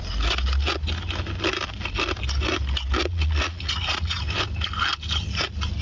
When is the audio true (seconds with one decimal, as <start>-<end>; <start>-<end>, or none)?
0.0-3.0; 4.2-5.8